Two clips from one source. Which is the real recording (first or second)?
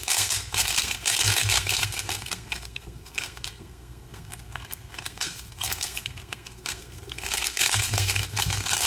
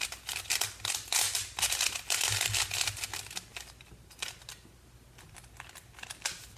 second